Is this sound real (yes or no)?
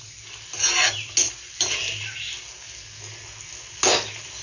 yes